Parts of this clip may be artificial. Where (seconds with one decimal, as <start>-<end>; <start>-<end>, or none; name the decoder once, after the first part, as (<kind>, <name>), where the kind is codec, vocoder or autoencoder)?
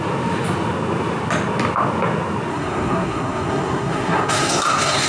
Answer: 2.5-5.1 (codec, SNAC)